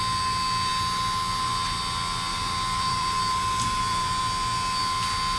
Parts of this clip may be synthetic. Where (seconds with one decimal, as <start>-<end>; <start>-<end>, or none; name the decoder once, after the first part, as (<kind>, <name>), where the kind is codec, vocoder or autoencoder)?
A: 2.3-4.2 (vocoder, BigVGAN v2)